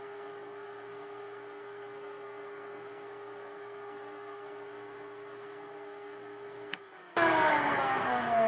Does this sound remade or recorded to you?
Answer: remade